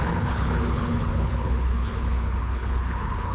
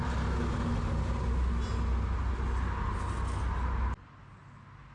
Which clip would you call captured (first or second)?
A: second